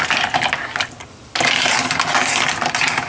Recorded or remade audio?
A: recorded